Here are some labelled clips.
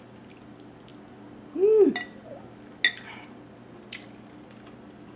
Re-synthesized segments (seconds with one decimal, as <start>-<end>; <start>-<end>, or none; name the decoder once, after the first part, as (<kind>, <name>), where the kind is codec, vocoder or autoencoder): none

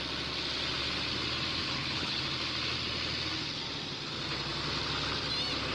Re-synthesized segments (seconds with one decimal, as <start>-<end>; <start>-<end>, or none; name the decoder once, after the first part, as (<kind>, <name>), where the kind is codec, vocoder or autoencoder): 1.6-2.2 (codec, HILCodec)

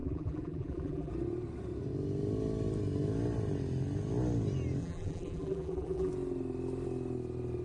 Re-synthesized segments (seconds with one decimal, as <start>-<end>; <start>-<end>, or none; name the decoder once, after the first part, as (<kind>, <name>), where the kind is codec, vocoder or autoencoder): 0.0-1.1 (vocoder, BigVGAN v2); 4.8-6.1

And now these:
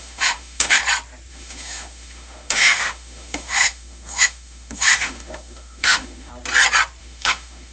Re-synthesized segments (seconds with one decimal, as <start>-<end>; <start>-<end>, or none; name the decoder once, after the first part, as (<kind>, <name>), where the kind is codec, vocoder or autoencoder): 0.0-0.8 (autoencoder, DAC-VAE); 1.3-6.3; 7.0-7.7